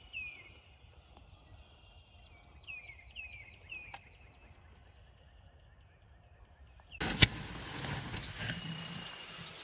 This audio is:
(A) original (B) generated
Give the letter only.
A